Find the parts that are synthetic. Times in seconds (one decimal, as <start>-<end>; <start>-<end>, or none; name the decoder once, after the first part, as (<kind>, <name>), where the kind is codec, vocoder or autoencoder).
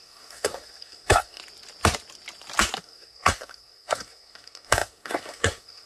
0.0-1.4 (codec, SNAC); 2.8-5.9